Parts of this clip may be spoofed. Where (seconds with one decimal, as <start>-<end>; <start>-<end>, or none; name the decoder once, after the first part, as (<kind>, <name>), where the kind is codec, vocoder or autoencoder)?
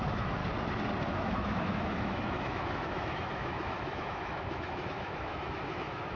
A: 0.0-0.4 (autoencoder, DAC-VAE); 1.1-6.2